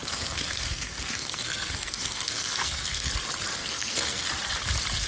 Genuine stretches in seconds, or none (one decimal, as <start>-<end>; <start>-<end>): 3.1-3.6; 4.3-5.1